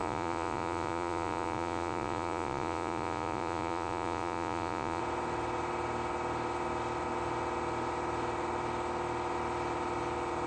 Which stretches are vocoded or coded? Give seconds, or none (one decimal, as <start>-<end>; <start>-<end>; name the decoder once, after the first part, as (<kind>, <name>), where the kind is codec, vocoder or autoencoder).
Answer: 0.0-5.0 (vocoder, Vocos)